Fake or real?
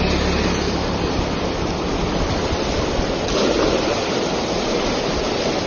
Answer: real